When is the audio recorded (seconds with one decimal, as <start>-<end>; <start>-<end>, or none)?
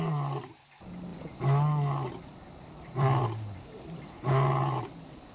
0.0-5.3